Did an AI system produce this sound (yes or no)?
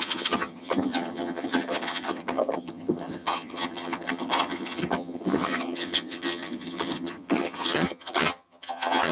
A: yes